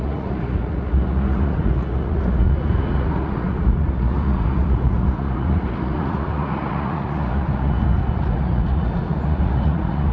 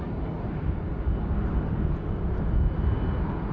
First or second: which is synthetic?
first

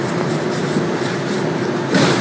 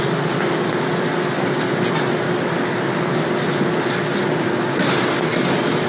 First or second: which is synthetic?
first